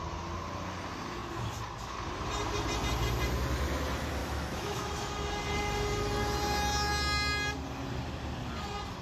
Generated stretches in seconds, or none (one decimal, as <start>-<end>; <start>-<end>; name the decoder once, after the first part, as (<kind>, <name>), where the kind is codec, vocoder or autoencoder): 4.2-5.1 (autoencoder, DAC-VAE)